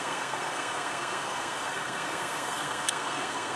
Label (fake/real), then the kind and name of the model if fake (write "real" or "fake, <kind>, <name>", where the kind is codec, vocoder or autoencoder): fake, codec, SNAC